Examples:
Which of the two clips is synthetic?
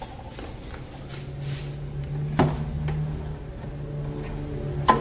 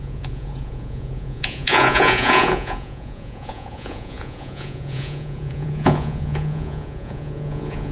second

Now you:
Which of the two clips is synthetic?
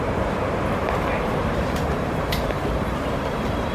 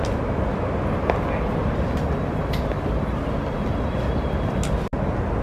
first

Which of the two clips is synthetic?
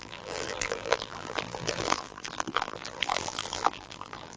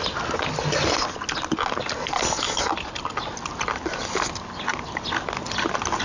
first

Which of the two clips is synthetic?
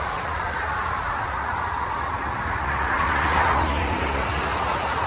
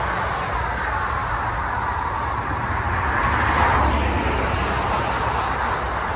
first